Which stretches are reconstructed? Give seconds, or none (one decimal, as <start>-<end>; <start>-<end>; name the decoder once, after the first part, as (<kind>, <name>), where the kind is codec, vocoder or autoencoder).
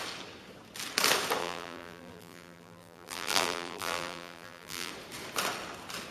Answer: 1.4-4.9 (vocoder, BigVGAN v2)